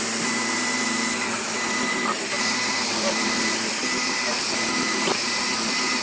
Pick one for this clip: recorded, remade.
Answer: remade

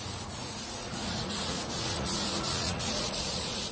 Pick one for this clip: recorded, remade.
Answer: remade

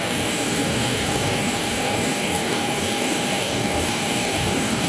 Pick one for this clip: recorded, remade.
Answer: remade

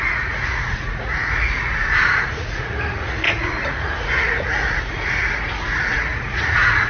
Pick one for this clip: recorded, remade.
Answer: remade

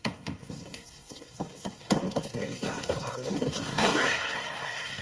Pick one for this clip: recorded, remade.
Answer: remade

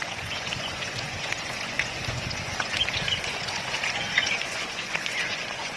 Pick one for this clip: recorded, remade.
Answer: remade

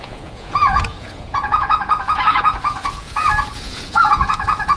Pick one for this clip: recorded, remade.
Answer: remade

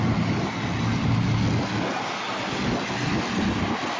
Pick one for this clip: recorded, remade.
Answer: recorded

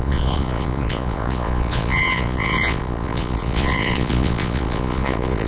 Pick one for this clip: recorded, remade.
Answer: remade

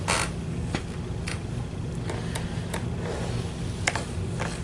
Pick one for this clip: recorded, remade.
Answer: recorded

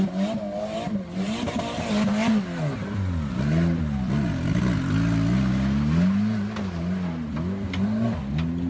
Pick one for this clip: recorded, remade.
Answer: recorded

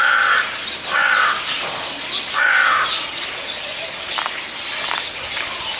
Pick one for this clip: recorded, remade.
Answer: recorded